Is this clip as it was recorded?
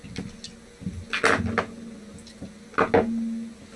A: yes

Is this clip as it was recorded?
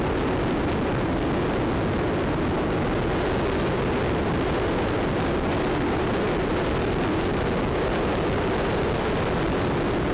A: yes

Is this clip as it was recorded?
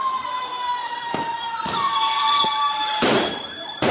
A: no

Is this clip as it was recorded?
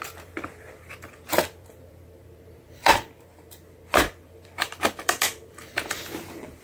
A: no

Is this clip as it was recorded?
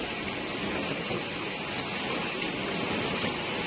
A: yes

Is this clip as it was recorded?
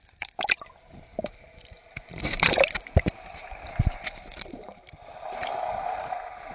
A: no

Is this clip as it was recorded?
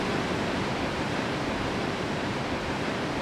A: no